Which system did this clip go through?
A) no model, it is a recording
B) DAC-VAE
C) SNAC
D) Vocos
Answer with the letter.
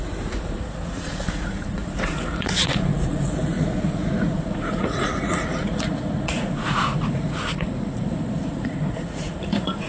D